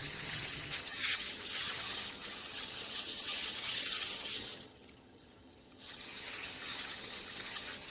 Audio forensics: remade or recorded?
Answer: remade